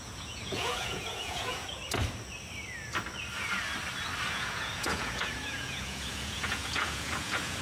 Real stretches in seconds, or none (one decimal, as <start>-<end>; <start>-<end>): 1.8-4.3